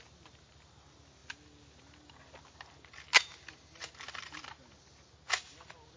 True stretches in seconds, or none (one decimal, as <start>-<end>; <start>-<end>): 0.0-6.0